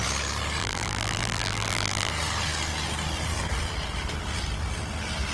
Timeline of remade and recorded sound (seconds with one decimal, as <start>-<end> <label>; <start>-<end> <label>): 0.0-0.6 recorded; 0.6-2.1 remade; 2.1-5.3 recorded